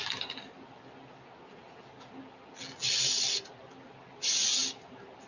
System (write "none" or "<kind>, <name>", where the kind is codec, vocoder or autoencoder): none